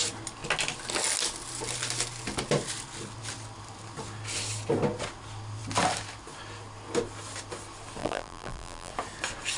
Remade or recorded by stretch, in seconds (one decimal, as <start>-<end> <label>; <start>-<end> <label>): 0.0-8.0 recorded; 8.0-8.9 remade; 8.9-9.6 recorded

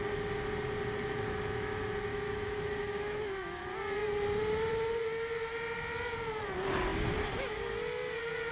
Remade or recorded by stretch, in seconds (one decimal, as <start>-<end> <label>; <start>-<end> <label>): 0.0-2.1 recorded; 2.1-3.6 remade; 3.6-8.5 recorded

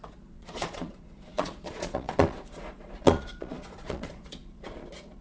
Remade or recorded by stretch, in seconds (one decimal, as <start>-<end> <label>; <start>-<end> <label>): 0.0-5.2 remade

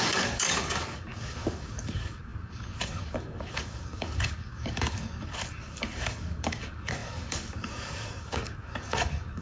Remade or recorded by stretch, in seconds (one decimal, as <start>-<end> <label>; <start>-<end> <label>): 0.0-9.4 remade

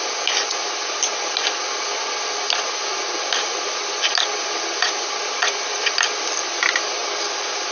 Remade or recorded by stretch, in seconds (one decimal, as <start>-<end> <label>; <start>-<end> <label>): 0.0-7.7 recorded

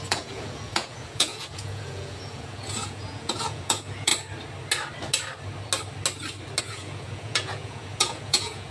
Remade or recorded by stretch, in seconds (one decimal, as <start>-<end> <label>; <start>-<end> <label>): 0.0-4.1 remade; 4.1-6.6 recorded; 6.6-8.7 remade

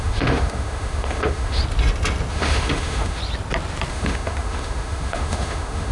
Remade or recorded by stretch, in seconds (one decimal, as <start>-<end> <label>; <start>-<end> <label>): 0.0-1.6 remade; 1.6-2.3 recorded; 2.3-3.2 remade; 3.2-3.9 recorded; 3.9-5.9 remade